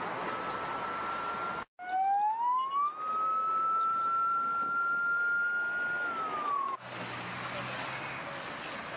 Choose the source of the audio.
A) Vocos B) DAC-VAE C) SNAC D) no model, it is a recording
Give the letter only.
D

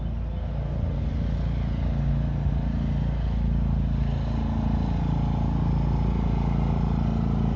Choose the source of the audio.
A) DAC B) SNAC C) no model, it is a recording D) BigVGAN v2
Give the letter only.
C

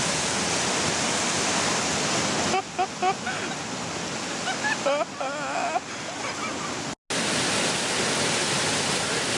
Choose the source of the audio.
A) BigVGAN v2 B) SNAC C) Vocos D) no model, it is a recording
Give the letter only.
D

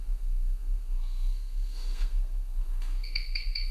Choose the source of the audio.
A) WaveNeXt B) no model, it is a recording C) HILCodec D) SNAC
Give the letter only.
D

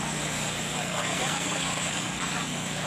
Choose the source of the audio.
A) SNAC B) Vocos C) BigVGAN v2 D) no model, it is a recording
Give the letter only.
A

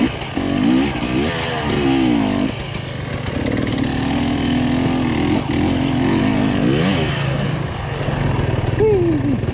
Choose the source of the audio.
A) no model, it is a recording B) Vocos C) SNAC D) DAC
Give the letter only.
A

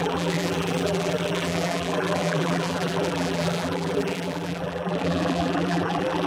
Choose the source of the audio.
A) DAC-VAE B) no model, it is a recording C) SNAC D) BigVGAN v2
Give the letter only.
D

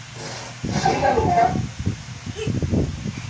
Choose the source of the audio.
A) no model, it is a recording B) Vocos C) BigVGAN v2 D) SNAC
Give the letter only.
A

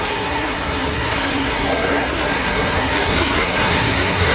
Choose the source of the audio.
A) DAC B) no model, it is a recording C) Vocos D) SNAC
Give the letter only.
D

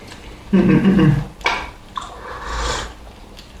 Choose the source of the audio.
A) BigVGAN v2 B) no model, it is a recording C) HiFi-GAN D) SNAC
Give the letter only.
B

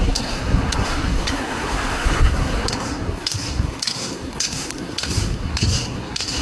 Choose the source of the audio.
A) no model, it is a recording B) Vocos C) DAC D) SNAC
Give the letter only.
D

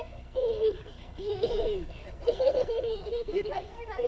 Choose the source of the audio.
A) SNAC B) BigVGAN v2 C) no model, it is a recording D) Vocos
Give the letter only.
A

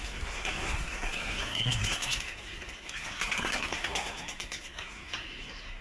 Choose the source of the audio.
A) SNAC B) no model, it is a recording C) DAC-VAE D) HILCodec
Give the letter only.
A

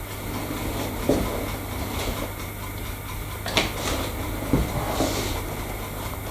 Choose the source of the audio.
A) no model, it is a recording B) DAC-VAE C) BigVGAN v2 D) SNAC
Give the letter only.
A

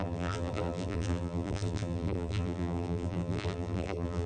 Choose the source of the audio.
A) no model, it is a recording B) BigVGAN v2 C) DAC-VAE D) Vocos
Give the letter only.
B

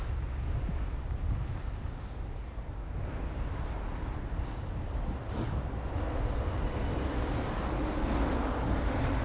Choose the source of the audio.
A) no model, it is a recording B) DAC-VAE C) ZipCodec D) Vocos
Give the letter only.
A